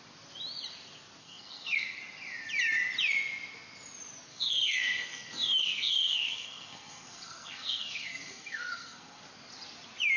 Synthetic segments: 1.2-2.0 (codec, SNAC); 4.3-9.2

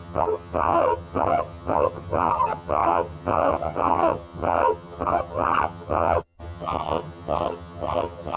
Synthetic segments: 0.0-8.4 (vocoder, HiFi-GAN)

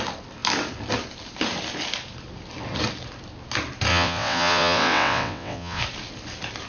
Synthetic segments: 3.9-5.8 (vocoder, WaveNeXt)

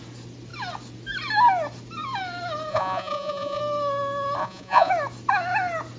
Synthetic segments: 2.7-3.6 (vocoder, Vocos); 4.4-4.9

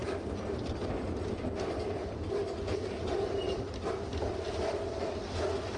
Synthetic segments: none

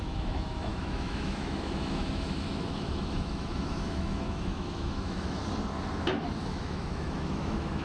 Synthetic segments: 0.0-5.4 (autoencoder, DAC-VAE); 6.4-7.8

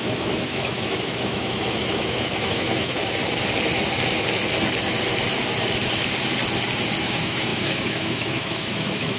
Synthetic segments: 0.0-3.0 (autoencoder, DAC-VAE); 7.0-9.2

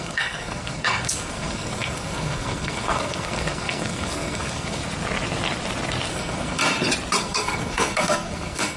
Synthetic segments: 0.0-4.8 (codec, SNAC); 6.1-6.6; 7.2-8.8